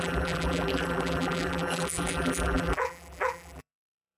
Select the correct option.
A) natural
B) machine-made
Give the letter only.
B